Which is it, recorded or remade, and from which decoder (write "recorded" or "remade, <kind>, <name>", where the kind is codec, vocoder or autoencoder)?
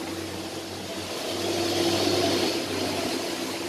recorded